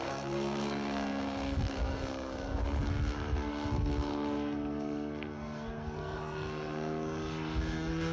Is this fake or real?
fake